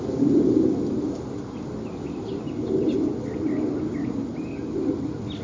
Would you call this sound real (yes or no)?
yes